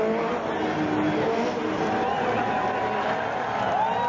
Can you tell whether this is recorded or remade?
recorded